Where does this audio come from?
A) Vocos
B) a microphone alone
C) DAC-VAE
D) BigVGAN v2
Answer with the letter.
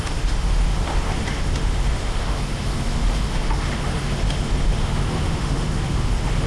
C